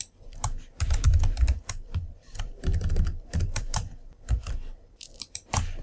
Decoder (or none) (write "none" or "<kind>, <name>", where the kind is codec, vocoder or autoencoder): vocoder, BigVGAN v2